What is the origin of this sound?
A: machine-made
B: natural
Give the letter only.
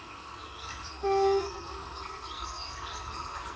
A